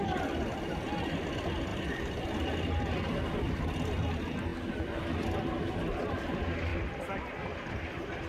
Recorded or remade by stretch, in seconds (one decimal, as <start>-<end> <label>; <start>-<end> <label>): 0.0-8.3 recorded